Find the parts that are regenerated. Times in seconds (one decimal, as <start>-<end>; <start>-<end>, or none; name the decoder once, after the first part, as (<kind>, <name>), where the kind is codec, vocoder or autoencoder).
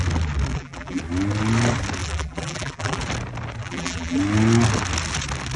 0.5-1.0 (vocoder, BigVGAN v2); 2.0-3.0; 3.6-4.2